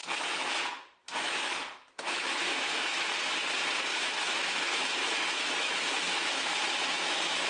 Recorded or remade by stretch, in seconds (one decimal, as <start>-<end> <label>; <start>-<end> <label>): 0.0-0.6 remade; 0.6-1.0 recorded; 1.0-3.1 remade; 3.1-3.9 recorded; 3.9-7.5 remade